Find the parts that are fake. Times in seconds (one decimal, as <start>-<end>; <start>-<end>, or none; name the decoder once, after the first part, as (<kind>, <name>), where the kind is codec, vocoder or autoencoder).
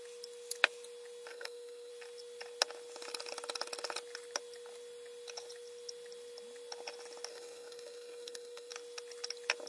1.3-1.9 (codec, SNAC); 7.3-8.7